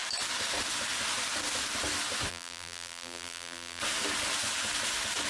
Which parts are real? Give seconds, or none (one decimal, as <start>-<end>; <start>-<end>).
0.0-2.3; 3.8-5.3